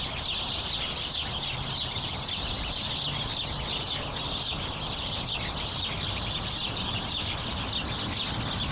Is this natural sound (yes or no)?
yes